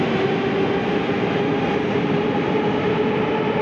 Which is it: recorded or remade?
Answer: recorded